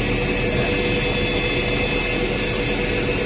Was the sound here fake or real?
real